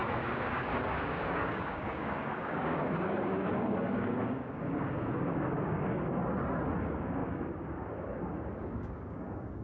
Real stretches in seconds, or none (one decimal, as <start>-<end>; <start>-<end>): 6.2-6.8